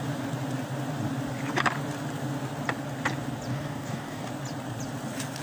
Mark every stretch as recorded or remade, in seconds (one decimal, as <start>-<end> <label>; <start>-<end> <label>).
0.0-3.5 recorded; 3.5-4.3 remade; 4.3-5.4 recorded